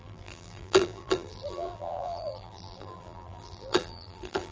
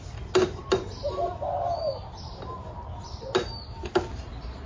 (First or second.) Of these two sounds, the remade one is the first